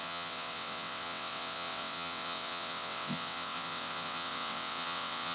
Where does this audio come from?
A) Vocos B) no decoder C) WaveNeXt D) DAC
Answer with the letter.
C